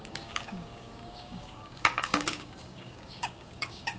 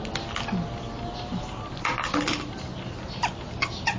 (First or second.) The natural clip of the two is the second